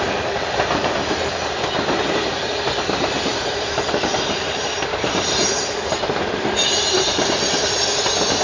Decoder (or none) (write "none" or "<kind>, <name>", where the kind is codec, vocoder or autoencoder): vocoder, BigVGAN v2